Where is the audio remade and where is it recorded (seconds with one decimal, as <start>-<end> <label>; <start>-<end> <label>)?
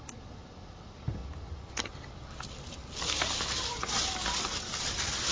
0.0-1.2 remade; 1.2-1.7 recorded; 1.7-2.8 remade; 2.8-3.7 recorded; 3.7-5.3 remade